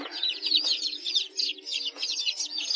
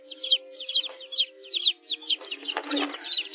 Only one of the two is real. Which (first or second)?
second